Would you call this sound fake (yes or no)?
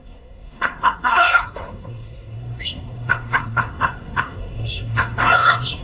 yes